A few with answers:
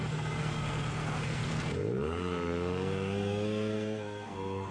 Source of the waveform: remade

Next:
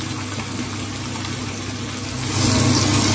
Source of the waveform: recorded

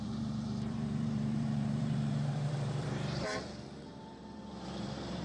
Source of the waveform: remade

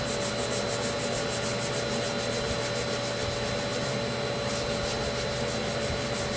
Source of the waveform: recorded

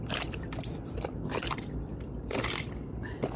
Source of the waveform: remade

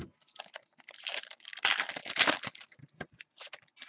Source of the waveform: recorded